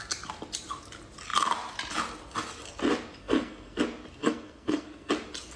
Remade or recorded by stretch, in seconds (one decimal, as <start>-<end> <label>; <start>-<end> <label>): 0.0-3.2 recorded; 3.2-3.8 remade; 3.8-4.2 recorded; 4.2-5.1 remade; 5.1-5.6 recorded